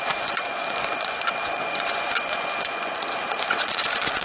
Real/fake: fake